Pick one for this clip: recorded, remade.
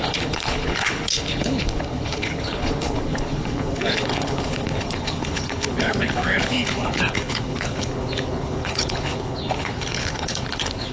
remade